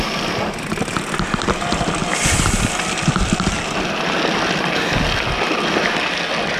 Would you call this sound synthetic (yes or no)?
no